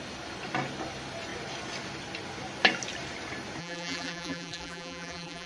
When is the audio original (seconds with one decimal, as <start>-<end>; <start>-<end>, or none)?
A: 0.0-3.6